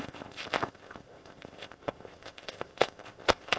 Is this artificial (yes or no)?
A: yes